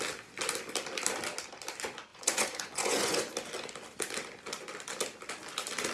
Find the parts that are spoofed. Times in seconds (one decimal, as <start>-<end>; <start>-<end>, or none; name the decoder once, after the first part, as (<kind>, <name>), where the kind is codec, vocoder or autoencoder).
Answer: 2.1-3.3 (vocoder, Vocos)